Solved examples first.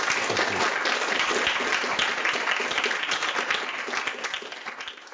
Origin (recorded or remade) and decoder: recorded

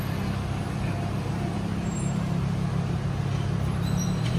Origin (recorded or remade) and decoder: recorded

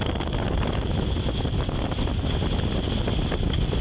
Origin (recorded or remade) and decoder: recorded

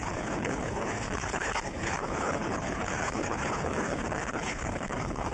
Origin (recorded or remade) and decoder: remade, codec, HILCodec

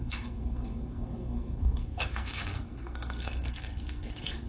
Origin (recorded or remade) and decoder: remade, codec, SNAC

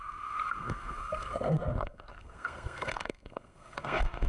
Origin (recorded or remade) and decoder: remade, codec, SNAC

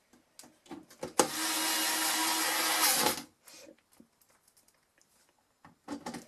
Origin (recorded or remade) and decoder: recorded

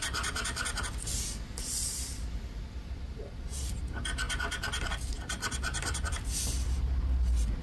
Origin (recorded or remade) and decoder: recorded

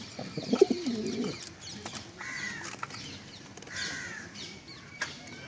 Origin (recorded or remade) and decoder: recorded